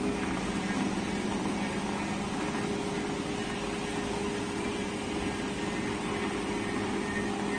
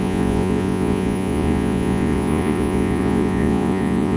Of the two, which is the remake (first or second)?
second